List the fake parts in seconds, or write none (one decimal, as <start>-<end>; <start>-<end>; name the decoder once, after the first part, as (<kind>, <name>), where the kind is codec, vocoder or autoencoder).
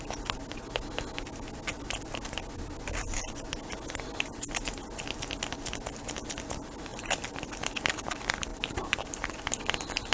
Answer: 6.9-7.5 (vocoder, BigVGAN v2); 8.5-9.2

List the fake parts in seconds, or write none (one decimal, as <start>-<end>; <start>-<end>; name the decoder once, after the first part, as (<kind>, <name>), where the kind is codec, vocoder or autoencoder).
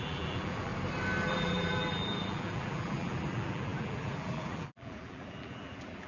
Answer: 0.0-0.7 (vocoder, BigVGAN v2); 1.3-6.1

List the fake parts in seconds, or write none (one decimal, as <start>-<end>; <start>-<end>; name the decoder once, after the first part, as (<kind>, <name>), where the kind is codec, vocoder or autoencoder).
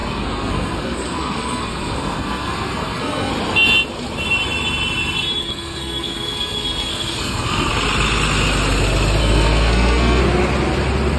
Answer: 0.0-3.3 (codec, SNAC); 5.4-7.7; 9.2-10.2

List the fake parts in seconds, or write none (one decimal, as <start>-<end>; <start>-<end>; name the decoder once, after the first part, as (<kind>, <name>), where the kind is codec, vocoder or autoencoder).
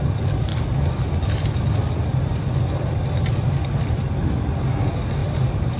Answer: 5.2-5.8 (vocoder, BigVGAN v2)